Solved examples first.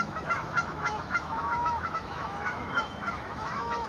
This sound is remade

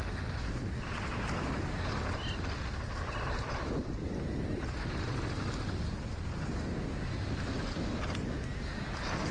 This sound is recorded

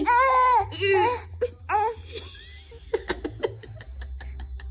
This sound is recorded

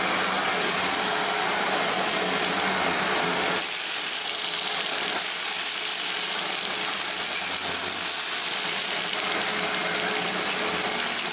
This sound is recorded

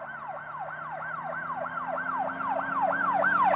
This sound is recorded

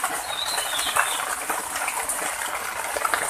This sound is recorded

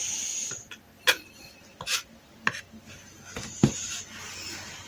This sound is recorded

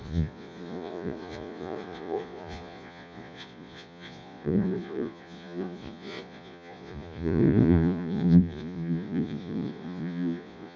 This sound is remade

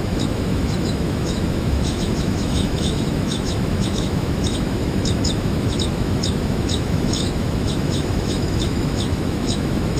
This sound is remade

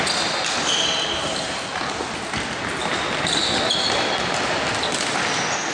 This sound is recorded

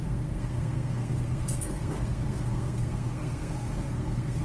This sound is remade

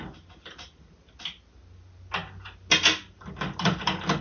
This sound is recorded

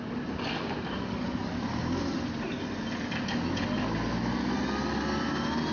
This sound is recorded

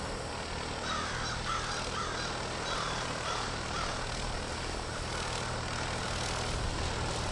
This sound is recorded